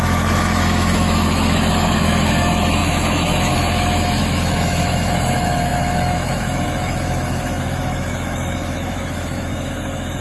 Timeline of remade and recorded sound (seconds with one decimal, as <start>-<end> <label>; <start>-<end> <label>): 0.0-10.2 remade